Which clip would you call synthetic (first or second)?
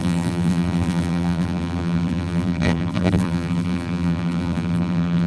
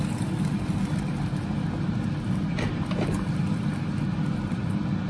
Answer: first